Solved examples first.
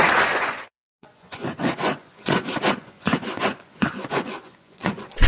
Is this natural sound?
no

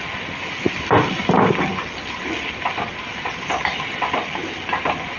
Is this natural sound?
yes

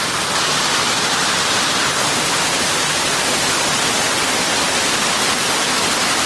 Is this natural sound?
yes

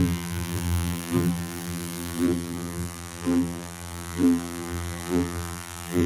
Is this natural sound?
no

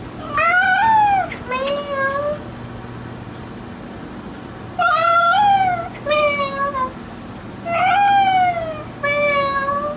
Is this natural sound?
yes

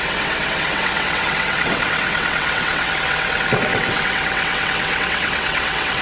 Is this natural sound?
no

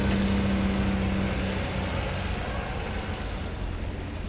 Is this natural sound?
yes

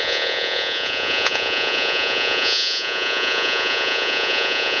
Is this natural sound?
no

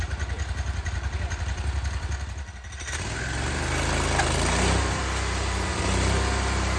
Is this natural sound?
yes